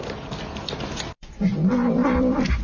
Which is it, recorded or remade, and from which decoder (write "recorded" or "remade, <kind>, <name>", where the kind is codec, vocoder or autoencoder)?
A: recorded